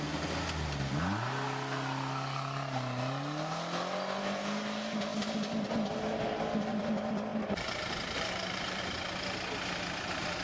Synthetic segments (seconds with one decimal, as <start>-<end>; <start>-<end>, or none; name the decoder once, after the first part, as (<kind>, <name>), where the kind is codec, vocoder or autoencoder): 7.3-8.8 (vocoder, BigVGAN v2)